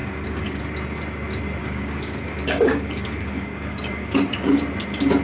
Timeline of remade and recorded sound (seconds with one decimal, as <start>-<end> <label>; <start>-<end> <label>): 0.0-0.6 remade; 0.6-1.6 recorded; 1.6-4.6 remade; 4.6-5.2 recorded

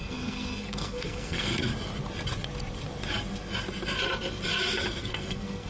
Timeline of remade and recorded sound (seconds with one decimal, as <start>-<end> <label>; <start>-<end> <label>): 0.0-1.6 remade; 1.6-5.0 recorded; 5.0-5.7 remade

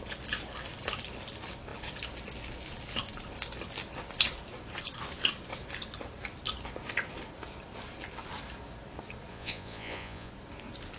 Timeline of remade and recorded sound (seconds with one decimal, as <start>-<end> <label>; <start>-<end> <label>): 0.0-9.3 recorded; 9.3-10.3 remade; 10.3-11.0 recorded

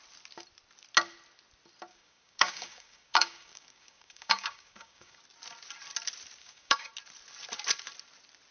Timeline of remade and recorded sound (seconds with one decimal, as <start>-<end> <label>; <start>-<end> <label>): 0.0-1.9 recorded; 1.9-5.2 remade; 5.2-6.4 recorded; 6.4-6.9 remade; 6.9-8.5 recorded

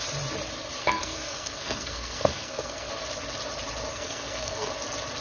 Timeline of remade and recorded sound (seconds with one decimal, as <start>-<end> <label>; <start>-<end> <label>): 0.0-0.8 recorded; 0.8-2.9 remade; 2.9-3.9 recorded; 3.9-4.7 remade; 4.7-5.2 recorded